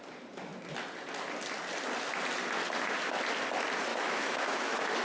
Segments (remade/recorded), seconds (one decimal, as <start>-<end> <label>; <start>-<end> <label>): 0.0-3.9 recorded; 3.9-5.0 remade